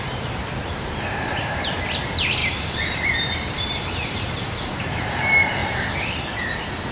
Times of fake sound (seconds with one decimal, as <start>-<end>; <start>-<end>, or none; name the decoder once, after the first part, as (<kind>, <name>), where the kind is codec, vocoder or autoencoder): 0.0-5.6 (vocoder, BigVGAN v2)